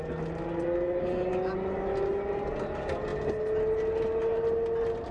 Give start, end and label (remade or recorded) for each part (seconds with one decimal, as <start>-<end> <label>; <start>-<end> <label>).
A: 0.0-5.1 recorded